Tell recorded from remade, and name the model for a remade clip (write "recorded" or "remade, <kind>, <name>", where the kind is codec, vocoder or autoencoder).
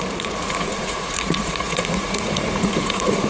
remade, vocoder, Vocos